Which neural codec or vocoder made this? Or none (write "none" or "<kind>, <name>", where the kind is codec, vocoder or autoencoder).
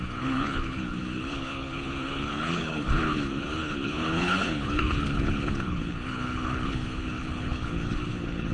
codec, HILCodec